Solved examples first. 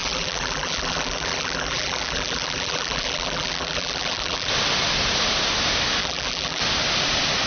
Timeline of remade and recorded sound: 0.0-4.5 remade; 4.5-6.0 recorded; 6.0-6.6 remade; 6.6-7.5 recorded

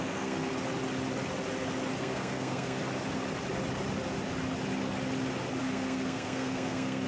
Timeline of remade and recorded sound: 0.0-0.5 remade; 0.5-2.0 recorded; 2.0-2.8 remade; 2.8-5.6 recorded; 5.6-7.1 remade

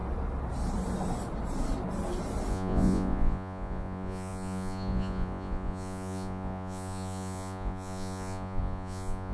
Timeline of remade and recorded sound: 0.0-2.5 recorded; 2.5-9.3 remade

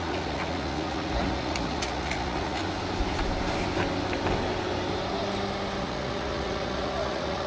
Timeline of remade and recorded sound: 0.0-2.6 remade; 2.6-5.8 recorded; 5.8-7.5 remade

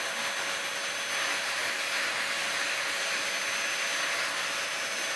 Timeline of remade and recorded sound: 0.0-5.2 recorded

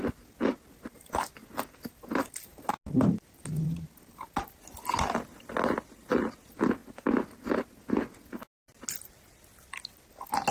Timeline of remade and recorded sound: 0.0-10.5 recorded

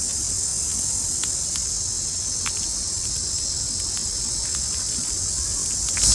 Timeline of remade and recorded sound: 0.0-6.1 recorded

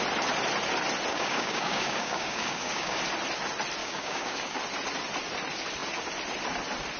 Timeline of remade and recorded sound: 0.0-1.1 recorded; 1.1-3.0 remade; 3.0-3.8 recorded; 3.8-4.6 remade; 4.6-7.0 recorded